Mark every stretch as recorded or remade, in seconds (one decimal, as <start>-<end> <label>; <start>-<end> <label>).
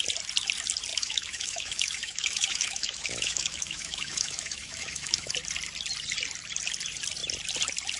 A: 0.0-0.9 recorded; 0.9-5.3 remade; 5.3-8.0 recorded